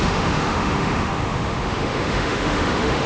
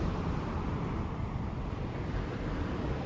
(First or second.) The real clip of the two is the second